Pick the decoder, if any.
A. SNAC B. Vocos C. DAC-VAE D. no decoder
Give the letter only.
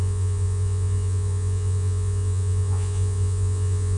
B